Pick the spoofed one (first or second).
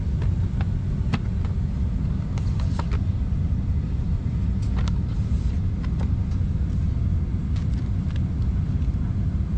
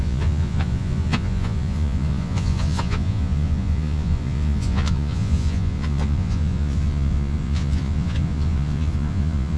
second